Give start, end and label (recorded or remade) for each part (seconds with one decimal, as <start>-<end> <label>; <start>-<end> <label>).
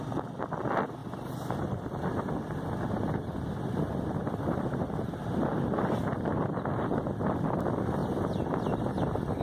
0.0-1.0 recorded; 1.0-2.6 remade; 2.6-8.0 recorded; 8.0-8.6 remade; 8.6-9.4 recorded